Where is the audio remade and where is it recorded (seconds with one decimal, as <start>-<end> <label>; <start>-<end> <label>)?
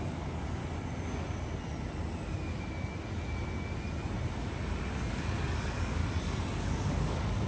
0.0-0.6 remade; 0.6-5.1 recorded; 5.1-6.0 remade; 6.0-6.6 recorded; 6.6-7.5 remade